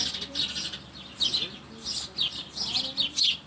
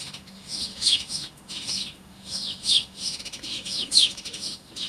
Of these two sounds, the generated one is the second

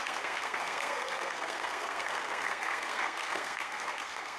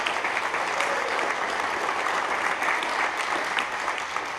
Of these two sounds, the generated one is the first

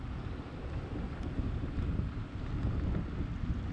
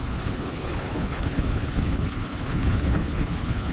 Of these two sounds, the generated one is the second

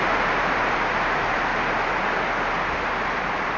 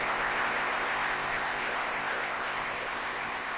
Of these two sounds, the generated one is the second